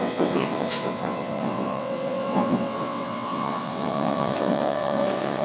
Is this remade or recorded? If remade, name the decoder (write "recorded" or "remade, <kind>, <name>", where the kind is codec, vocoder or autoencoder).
remade, vocoder, WaveNeXt